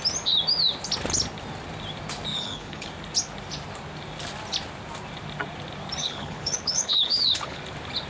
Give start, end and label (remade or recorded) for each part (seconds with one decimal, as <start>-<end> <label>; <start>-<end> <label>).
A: 0.0-2.3 recorded; 2.3-2.9 remade; 2.9-6.0 recorded; 6.0-7.6 remade; 7.6-8.1 recorded